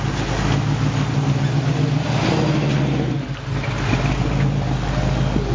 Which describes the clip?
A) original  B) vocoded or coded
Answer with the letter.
A